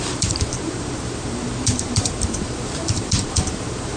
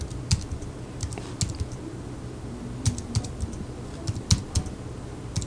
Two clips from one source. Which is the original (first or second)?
second